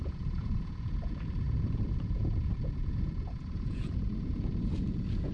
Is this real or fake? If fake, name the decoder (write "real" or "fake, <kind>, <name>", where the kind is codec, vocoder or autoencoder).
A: fake, vocoder, Vocos